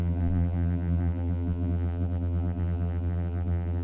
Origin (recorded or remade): remade